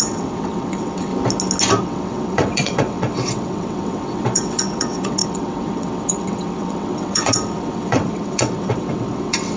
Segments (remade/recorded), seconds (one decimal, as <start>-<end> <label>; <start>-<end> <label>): 0.0-1.1 remade; 1.1-1.8 recorded; 1.8-9.6 remade